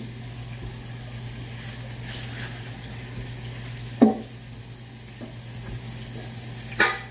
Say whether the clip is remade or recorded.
recorded